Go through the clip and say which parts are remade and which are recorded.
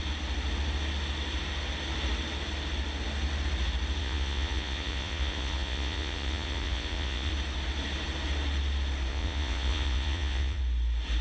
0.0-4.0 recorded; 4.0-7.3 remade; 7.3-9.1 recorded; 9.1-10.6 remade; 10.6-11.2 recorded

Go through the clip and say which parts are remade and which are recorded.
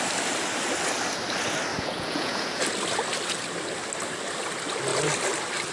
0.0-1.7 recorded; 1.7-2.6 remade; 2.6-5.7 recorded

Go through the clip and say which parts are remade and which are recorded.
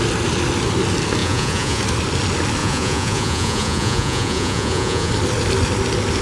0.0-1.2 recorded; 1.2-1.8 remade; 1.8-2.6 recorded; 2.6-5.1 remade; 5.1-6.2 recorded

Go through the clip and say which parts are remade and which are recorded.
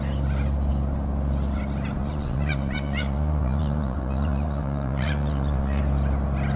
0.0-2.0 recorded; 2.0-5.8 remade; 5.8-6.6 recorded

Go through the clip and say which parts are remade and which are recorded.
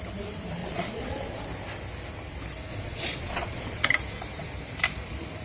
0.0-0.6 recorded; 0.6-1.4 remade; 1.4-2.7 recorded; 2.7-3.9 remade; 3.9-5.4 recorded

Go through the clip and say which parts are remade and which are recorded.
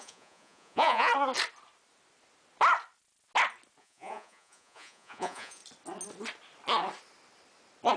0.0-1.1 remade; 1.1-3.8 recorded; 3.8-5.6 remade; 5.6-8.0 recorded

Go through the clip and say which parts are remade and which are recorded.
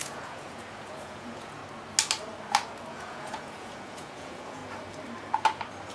0.0-1.6 remade; 1.6-2.9 recorded; 2.9-4.6 remade; 4.6-5.9 recorded